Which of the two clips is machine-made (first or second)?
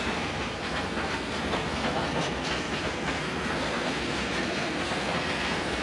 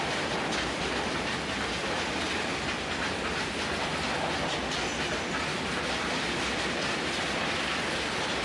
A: first